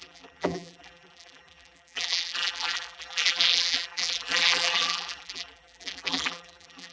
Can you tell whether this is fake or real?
fake